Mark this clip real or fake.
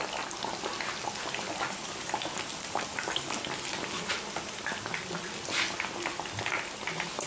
real